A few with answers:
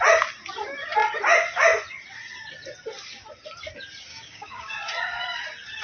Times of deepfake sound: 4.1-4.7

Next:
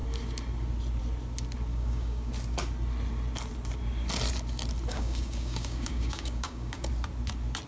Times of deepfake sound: 1.7-2.3; 4.9-6.9

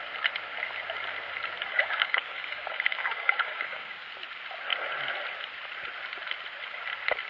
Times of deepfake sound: 1.7-4.1

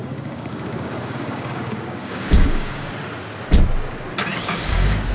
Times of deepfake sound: 0.0-2.9; 4.3-5.1

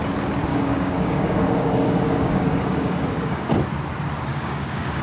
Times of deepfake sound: 0.5-3.5; 4.3-5.0

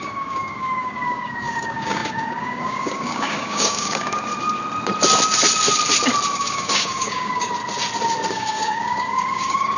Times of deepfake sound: 0.0-4.3; 6.3-7.6; 8.3-9.8